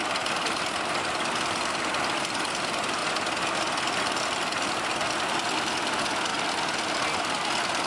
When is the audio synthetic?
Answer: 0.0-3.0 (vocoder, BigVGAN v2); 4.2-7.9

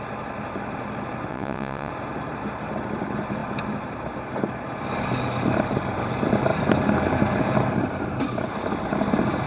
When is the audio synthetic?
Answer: 1.3-1.9 (vocoder, WaveNeXt)

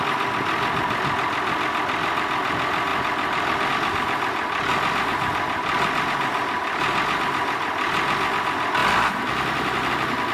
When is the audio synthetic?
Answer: 8.8-9.9 (vocoder, BigVGAN v2)